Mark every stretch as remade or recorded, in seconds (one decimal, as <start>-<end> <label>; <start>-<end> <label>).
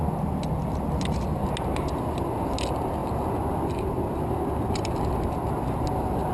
0.0-6.3 recorded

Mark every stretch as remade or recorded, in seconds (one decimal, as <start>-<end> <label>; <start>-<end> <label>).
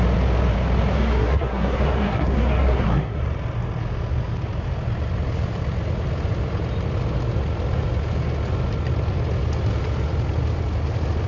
0.0-0.9 recorded; 0.9-3.2 remade; 3.2-11.3 recorded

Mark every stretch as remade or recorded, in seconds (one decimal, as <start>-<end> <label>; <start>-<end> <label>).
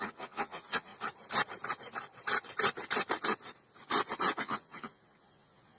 0.0-0.9 remade; 0.9-4.4 recorded; 4.4-5.8 remade